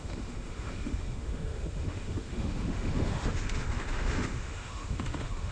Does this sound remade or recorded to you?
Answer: remade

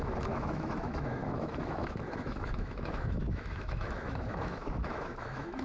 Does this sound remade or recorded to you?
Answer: remade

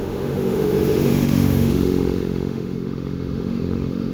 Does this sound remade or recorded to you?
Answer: remade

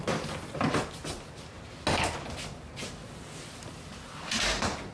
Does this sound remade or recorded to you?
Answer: recorded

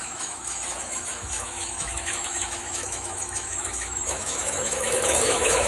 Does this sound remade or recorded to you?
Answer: remade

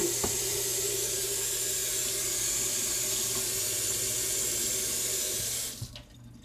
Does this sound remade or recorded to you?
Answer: recorded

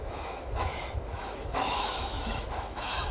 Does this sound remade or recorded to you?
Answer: remade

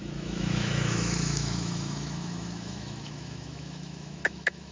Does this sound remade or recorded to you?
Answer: remade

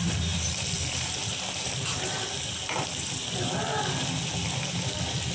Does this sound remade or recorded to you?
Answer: recorded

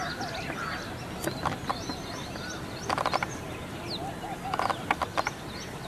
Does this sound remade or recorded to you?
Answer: recorded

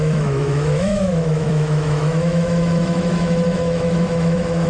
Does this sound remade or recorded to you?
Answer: remade